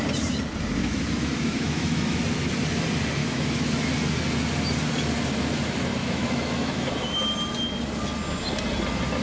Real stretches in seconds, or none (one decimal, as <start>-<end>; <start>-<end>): 0.0-0.8; 2.2-3.2; 3.9-6.0; 6.9-9.2